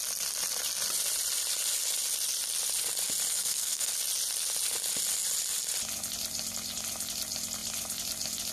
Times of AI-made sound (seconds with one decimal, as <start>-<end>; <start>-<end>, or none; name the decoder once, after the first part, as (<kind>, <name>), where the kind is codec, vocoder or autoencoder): 3.3-3.9 (codec, SNAC)